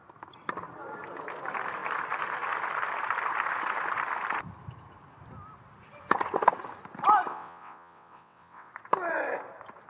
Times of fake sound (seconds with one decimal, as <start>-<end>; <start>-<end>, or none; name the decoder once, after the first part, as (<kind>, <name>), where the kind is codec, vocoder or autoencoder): 7.3-8.7 (vocoder, WaveNeXt)